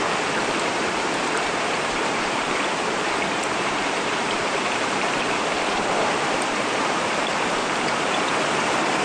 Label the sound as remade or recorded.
remade